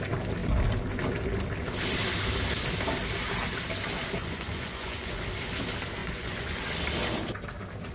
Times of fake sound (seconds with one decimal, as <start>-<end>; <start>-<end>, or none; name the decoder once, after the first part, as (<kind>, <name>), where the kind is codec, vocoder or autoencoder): 4.2-5.2 (vocoder, Vocos); 6.0-6.6